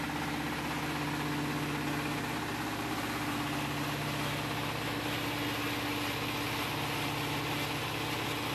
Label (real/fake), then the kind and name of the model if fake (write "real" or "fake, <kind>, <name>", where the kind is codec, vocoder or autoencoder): real